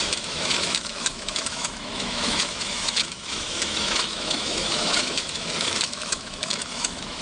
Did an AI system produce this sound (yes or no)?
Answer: yes